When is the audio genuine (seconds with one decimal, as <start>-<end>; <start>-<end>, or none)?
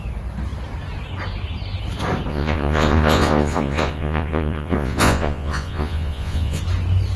0.0-2.3; 6.6-7.2